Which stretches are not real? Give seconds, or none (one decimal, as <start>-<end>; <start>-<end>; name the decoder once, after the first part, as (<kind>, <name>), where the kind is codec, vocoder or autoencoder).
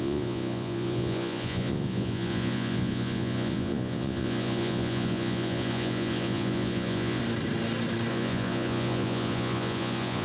0.0-7.2 (vocoder, Vocos); 8.1-10.2